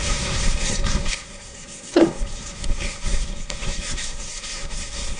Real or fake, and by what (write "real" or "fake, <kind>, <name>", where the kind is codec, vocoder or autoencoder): fake, codec, SNAC